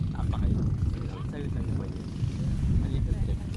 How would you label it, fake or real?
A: real